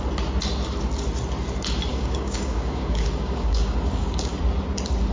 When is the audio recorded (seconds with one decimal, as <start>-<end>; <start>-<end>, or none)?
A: 0.0-1.9; 4.4-5.1